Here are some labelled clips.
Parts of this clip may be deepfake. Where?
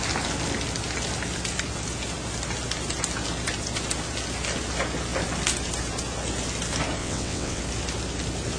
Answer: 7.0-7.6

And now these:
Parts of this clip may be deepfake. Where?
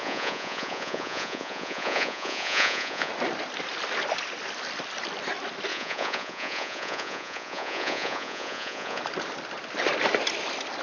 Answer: 0.0-3.1; 5.7-9.0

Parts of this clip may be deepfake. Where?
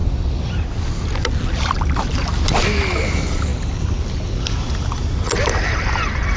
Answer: none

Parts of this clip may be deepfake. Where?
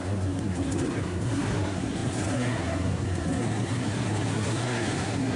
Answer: 0.0-5.4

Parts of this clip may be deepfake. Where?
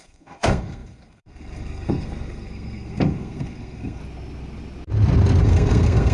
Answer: 0.0-4.0; 5.4-6.1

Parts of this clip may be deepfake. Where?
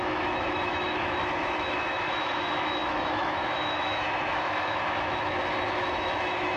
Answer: 0.0-6.6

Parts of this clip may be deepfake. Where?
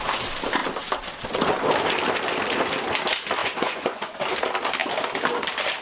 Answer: 3.4-4.2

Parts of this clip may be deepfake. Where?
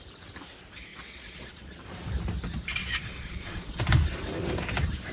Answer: 0.9-1.8; 2.8-3.8